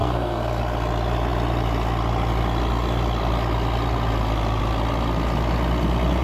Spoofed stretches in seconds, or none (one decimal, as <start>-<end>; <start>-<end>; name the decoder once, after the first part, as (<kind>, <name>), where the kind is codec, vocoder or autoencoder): 0.0-0.6 (codec, SNAC)